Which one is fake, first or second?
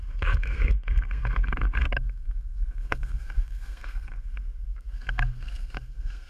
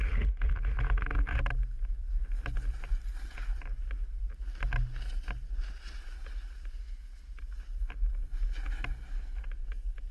first